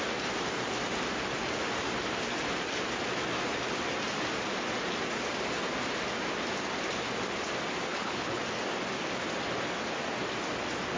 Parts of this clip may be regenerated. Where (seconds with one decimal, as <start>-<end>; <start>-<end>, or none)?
7.9-8.4